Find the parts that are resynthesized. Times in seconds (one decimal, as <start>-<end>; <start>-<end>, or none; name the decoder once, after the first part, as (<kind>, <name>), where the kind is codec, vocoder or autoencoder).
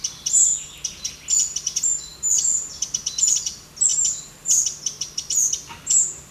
3.9-4.8 (vocoder, BigVGAN v2)